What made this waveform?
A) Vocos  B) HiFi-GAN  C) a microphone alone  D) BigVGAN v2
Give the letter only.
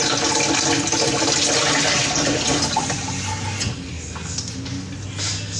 C